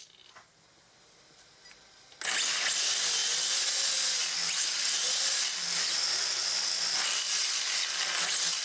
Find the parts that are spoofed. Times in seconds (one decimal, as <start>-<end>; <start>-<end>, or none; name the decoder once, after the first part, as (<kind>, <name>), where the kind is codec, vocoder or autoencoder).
none